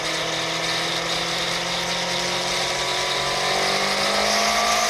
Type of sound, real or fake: real